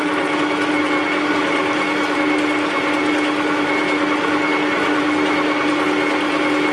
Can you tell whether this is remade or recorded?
recorded